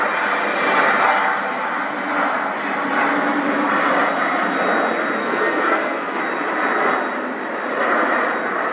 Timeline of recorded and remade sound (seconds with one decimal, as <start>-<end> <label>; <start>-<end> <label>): 0.0-5.2 recorded; 5.2-6.2 remade; 6.2-8.7 recorded